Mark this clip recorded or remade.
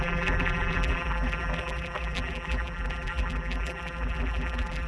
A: remade